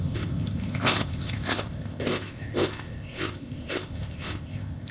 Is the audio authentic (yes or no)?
no